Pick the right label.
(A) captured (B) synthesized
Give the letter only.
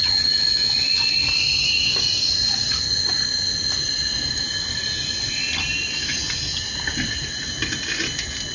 A